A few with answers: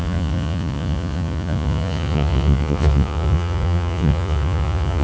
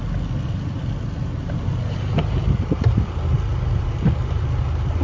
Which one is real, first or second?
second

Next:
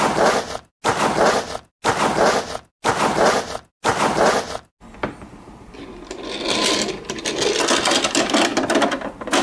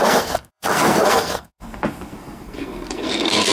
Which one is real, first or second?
first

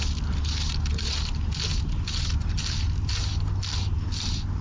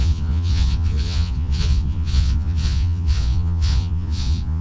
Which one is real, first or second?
first